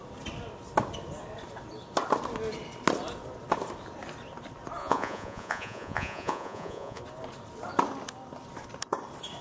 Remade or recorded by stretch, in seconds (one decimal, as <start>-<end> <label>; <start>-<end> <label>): 0.0-4.8 recorded; 4.8-7.0 remade; 7.0-9.4 recorded